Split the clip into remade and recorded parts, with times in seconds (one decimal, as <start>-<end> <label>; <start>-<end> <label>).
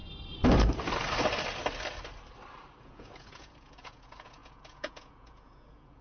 0.0-2.8 recorded; 2.8-6.0 remade